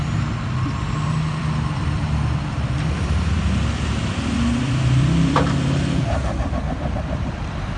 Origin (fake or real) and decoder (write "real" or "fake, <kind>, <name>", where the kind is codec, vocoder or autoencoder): fake, vocoder, BigVGAN v2